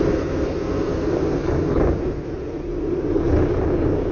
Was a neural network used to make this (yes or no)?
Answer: no